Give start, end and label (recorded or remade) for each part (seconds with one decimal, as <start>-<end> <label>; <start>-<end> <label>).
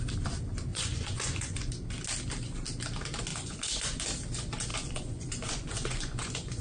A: 0.0-0.7 recorded; 0.7-1.7 remade; 1.7-3.3 recorded; 3.3-4.0 remade; 4.0-4.7 recorded; 4.7-6.6 remade